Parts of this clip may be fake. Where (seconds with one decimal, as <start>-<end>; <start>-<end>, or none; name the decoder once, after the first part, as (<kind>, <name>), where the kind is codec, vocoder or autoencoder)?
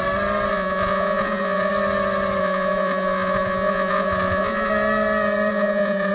0.5-1.7 (vocoder, Vocos); 2.4-4.7; 5.5-6.1